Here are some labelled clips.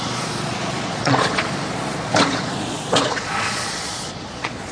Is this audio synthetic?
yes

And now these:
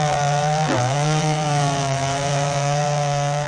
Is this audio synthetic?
yes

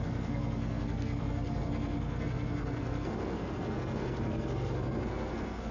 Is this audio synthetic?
yes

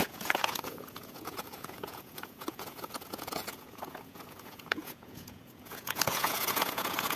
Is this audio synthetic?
yes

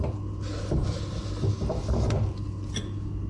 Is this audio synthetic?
no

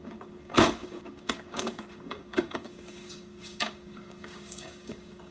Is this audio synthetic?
yes